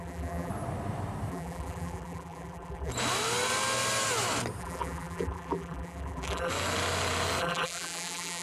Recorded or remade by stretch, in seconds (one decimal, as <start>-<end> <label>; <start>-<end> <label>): 0.0-0.5 remade; 0.5-1.3 recorded; 1.3-2.9 remade; 2.9-4.6 recorded; 4.6-6.5 remade; 6.5-7.4 recorded; 7.4-8.4 remade